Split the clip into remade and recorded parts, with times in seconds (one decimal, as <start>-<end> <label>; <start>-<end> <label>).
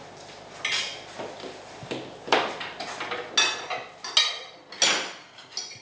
0.0-5.8 recorded